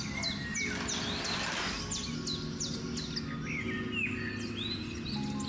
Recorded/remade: recorded